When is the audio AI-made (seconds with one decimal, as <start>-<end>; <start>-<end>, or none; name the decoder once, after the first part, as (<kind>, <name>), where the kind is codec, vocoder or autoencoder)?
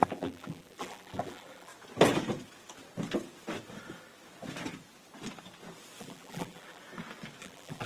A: 0.0-1.7 (vocoder, BigVGAN v2); 6.0-6.8; 7.4-7.9